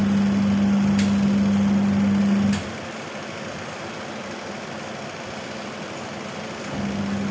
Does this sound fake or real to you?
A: real